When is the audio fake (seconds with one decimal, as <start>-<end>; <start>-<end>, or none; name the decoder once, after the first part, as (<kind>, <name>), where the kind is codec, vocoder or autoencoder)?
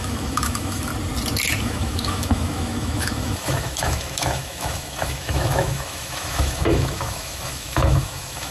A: 0.0-0.9 (autoencoder, DAC-VAE); 1.6-8.5